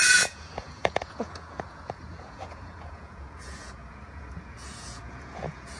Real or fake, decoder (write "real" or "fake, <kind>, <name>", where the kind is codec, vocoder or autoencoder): fake, vocoder, Vocos